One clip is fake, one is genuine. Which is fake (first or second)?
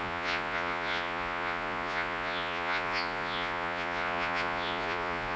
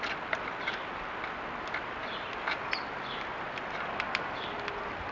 first